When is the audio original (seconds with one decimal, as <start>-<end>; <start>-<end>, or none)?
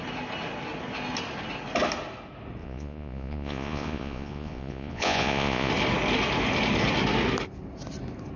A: 0.0-2.6; 5.7-8.4